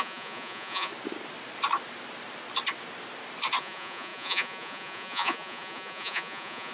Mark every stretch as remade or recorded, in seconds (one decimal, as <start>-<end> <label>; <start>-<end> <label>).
0.0-0.9 remade; 0.9-3.6 recorded; 3.6-6.7 remade